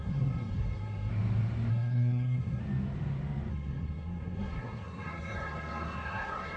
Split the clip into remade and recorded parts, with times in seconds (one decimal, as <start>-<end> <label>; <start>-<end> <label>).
0.0-1.1 remade; 1.1-1.7 recorded; 1.7-2.6 remade; 2.6-3.5 recorded; 3.5-6.6 remade